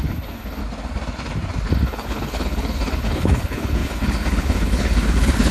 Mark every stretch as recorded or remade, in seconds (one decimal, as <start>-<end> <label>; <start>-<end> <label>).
0.0-0.6 remade; 0.6-1.7 recorded; 1.7-5.5 remade